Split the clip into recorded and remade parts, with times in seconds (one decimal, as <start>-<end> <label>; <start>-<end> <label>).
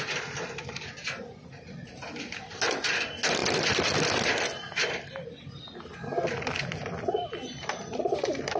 0.0-8.6 recorded